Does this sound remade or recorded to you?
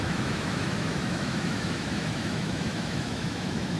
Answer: remade